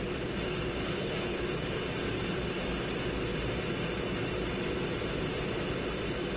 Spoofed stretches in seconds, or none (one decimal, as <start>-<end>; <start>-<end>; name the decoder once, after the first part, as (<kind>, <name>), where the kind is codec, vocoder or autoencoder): 0.8-1.4 (codec, HILCodec)

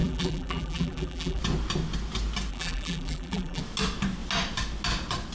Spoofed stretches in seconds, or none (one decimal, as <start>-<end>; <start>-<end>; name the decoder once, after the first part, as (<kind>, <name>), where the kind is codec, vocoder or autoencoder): 0.0-1.4 (vocoder, BigVGAN v2); 2.5-3.6

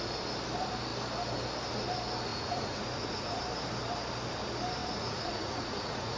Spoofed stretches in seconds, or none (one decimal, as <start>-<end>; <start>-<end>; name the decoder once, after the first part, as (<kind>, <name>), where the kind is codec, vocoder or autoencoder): 2.3-3.4 (vocoder, Vocos); 4.8-6.2

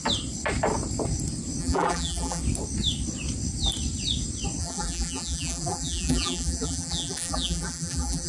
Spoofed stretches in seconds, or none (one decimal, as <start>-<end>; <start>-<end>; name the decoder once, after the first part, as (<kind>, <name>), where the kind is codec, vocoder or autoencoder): 1.6-2.4 (vocoder, BigVGAN v2); 4.6-8.3

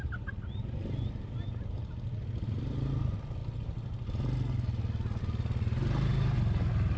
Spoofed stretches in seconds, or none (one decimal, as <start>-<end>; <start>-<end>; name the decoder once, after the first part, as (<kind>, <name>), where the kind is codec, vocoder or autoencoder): none

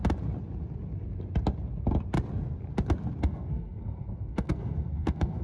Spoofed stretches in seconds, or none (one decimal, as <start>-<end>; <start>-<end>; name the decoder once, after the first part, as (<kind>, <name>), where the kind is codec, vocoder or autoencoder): 3.2-5.4 (codec, SNAC)

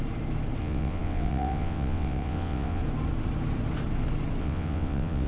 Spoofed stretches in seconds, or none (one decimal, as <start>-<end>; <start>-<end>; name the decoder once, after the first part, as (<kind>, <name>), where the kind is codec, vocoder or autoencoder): 0.6-2.8 (vocoder, WaveNeXt); 4.4-5.3